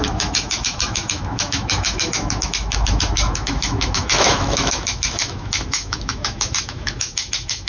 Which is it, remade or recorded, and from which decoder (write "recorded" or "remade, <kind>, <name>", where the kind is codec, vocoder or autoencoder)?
remade, autoencoder, DAC-VAE